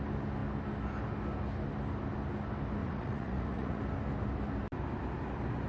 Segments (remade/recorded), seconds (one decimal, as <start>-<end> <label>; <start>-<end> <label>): 0.0-2.8 recorded; 2.8-3.8 remade; 3.8-5.7 recorded